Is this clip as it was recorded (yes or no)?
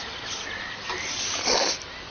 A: yes